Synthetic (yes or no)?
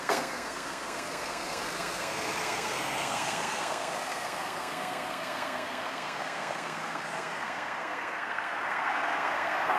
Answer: yes